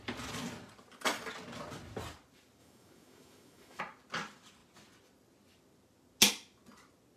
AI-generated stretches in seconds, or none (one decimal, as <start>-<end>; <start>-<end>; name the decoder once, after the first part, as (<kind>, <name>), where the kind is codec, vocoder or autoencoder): 2.6-3.8 (autoencoder, DAC-VAE)